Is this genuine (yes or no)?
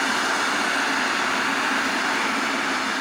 yes